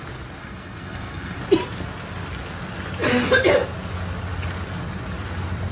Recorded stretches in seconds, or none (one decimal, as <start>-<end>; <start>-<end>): 0.0-0.4; 1.4-5.7